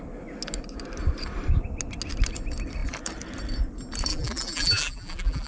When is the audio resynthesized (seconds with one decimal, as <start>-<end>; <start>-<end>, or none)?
4.1-5.5